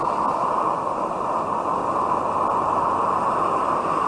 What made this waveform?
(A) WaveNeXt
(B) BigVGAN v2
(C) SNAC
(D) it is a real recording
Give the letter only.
D